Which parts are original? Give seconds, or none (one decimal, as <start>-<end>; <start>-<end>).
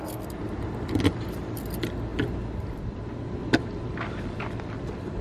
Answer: 0.0-5.2